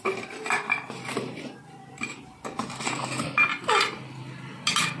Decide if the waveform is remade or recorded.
recorded